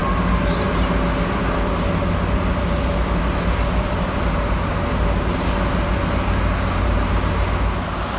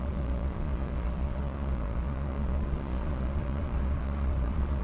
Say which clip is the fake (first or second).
second